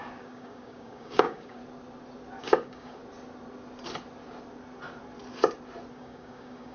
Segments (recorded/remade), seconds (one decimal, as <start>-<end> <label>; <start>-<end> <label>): 0.0-1.6 remade; 1.6-2.4 recorded; 2.4-3.0 remade; 3.0-5.9 recorded; 5.9-6.7 remade